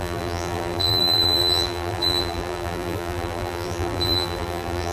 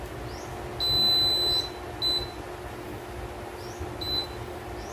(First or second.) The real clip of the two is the second